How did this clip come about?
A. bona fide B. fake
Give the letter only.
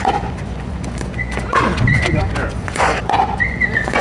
B